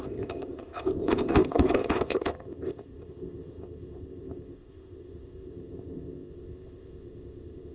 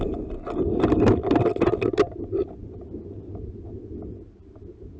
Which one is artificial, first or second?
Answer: first